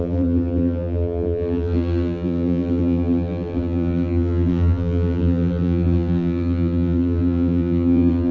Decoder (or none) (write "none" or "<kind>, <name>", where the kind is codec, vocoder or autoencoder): vocoder, BigVGAN v2